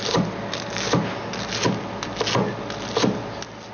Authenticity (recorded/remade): recorded